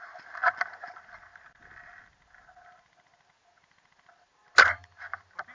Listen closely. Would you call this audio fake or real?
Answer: real